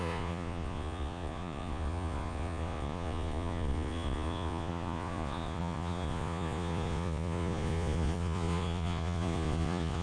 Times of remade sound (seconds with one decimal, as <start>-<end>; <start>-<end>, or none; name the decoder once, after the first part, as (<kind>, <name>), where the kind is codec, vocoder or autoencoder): 0.0-10.0 (vocoder, Vocos)